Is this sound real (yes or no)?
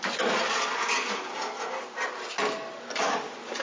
yes